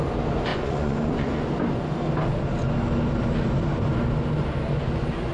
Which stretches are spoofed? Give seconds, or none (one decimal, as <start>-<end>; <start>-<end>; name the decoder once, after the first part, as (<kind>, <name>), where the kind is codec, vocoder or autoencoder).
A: 0.5-1.5 (vocoder, Vocos)